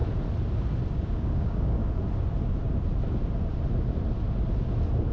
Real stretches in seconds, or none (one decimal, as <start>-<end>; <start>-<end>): 0.0-0.9; 1.8-5.1